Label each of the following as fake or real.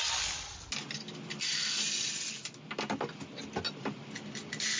real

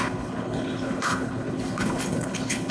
fake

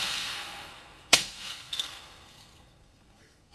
fake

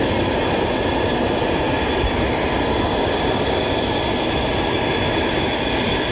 real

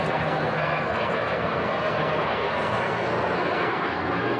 fake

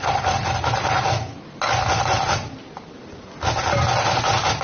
real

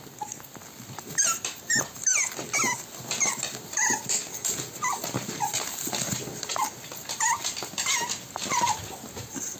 real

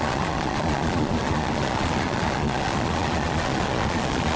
fake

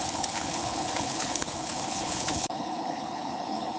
fake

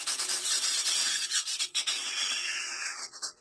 fake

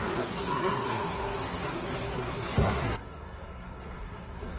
fake